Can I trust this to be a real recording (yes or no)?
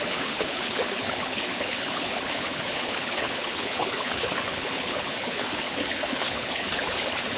no